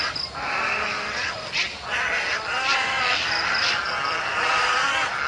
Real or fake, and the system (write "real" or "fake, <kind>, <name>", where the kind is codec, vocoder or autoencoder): real